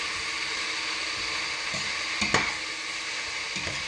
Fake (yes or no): no